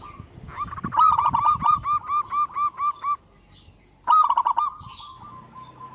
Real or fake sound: real